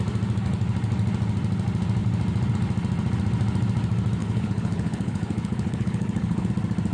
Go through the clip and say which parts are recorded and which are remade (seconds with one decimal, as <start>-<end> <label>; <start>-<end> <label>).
0.0-4.2 recorded; 4.2-6.5 remade; 6.5-6.9 recorded